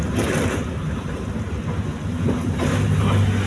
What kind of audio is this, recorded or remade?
recorded